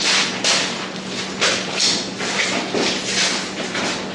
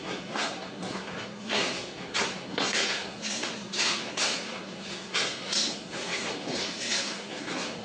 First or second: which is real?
first